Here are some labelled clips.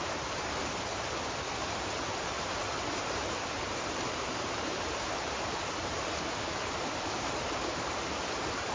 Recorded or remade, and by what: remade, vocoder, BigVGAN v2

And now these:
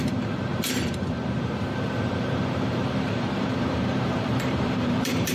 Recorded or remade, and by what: remade, vocoder, BigVGAN v2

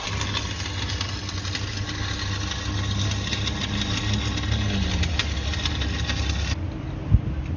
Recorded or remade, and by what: recorded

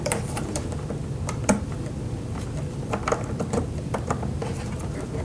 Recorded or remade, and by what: remade, vocoder, BigVGAN v2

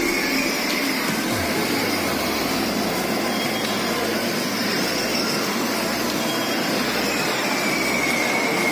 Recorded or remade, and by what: recorded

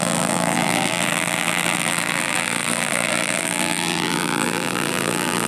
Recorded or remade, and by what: remade, vocoder, BigVGAN v2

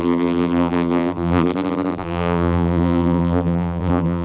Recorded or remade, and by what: remade, vocoder, BigVGAN v2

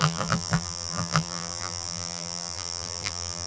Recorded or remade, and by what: remade, vocoder, BigVGAN v2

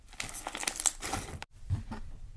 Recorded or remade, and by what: remade, vocoder, BigVGAN v2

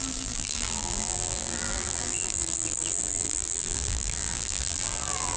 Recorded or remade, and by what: remade, vocoder, BigVGAN v2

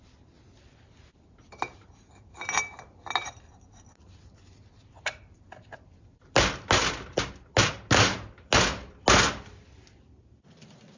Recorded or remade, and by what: recorded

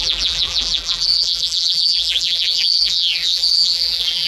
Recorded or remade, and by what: remade, vocoder, BigVGAN v2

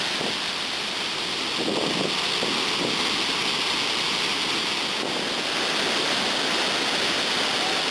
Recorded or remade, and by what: recorded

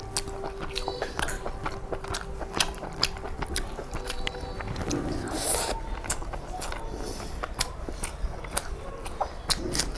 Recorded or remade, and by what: recorded